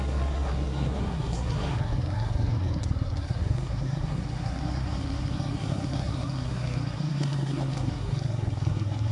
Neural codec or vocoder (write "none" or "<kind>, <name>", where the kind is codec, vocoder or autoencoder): codec, SNAC